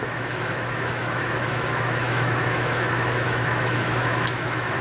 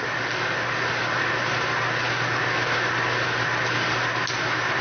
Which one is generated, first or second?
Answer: first